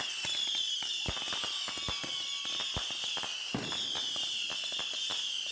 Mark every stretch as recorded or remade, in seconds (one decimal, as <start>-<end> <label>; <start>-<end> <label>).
0.0-5.5 recorded